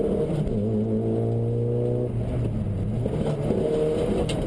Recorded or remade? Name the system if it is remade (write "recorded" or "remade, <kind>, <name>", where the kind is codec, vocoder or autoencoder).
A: recorded